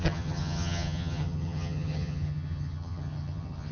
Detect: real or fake fake